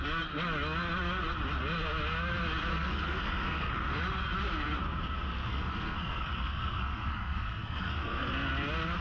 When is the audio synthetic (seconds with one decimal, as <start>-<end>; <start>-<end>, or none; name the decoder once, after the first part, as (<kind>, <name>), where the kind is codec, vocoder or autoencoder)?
2.7-3.7 (codec, SNAC); 5.5-8.5